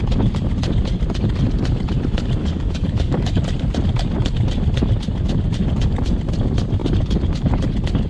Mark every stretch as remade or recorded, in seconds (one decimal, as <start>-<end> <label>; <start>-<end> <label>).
0.0-2.4 recorded; 2.4-3.4 remade; 3.4-8.1 recorded